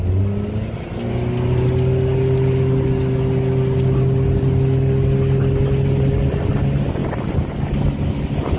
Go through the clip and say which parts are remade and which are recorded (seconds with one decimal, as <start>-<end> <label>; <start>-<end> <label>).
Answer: 0.0-8.6 recorded